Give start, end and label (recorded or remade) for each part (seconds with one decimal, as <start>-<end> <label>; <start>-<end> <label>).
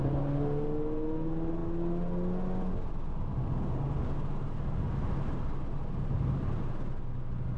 0.0-7.6 recorded